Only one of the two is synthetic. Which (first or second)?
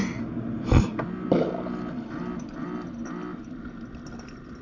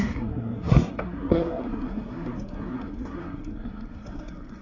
second